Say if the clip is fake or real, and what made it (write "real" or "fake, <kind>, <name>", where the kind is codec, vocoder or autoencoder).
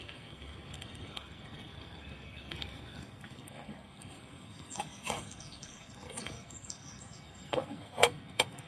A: fake, codec, SNAC